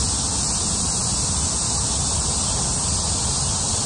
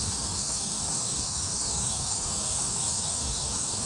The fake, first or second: second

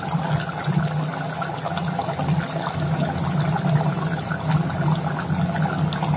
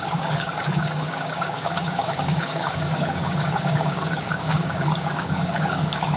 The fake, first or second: second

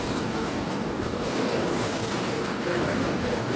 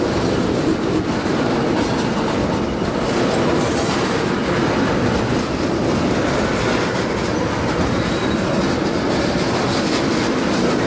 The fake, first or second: first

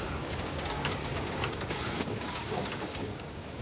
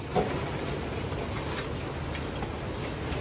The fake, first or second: first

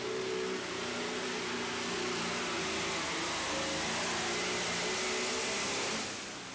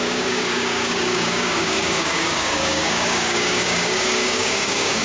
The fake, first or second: second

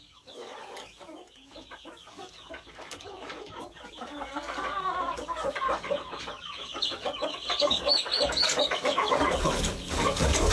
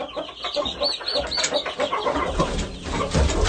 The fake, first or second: first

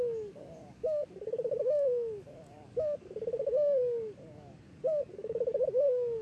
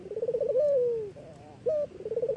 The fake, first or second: first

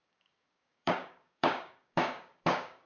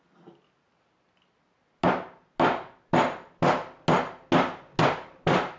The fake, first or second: first